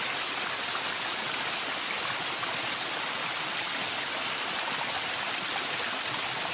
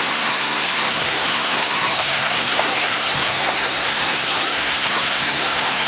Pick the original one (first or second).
first